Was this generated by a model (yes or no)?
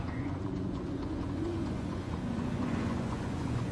yes